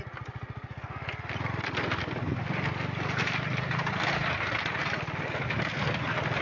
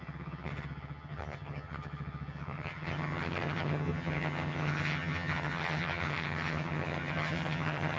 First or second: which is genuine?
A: first